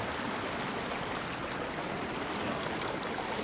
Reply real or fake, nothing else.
real